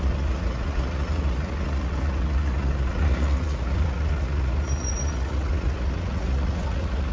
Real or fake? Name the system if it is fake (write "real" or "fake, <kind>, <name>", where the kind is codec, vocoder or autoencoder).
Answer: fake, vocoder, Vocos